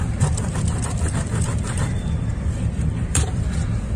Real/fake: fake